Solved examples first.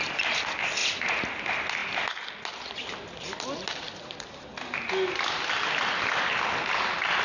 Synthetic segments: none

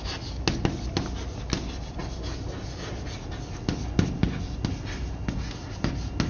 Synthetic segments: none

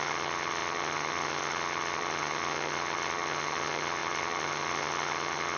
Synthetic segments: 0.0-5.6 (vocoder, HiFi-GAN)

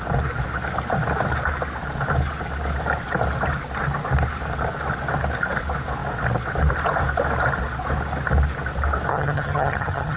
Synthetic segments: 9.1-10.2 (vocoder, HiFi-GAN)